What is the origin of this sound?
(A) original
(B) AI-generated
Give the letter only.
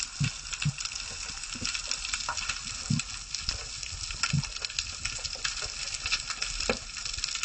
A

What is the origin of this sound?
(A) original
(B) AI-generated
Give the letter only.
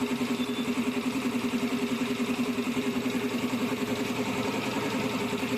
B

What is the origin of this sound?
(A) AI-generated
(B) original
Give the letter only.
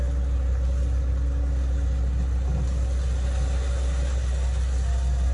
B